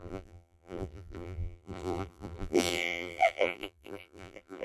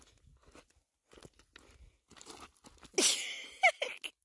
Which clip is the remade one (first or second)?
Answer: first